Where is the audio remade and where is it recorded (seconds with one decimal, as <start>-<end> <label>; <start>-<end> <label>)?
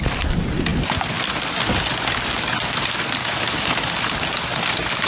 0.0-3.2 recorded; 3.2-3.9 remade; 3.9-5.1 recorded